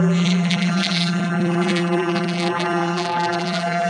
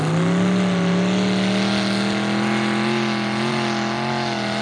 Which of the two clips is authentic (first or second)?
second